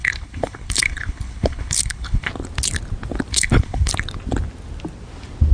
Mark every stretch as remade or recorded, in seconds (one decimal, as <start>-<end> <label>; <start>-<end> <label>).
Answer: 0.0-2.3 remade; 2.3-3.3 recorded; 3.3-3.9 remade; 3.9-5.5 recorded